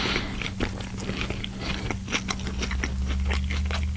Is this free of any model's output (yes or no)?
yes